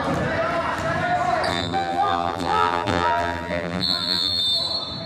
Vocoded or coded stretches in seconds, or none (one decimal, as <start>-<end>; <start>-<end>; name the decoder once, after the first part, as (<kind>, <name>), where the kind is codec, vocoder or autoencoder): 1.5-4.4 (vocoder, BigVGAN v2)